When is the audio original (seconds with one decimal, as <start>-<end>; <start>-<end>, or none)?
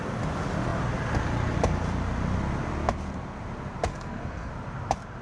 0.0-3.9; 4.5-5.2